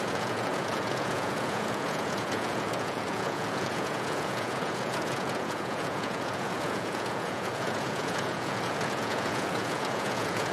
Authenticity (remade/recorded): remade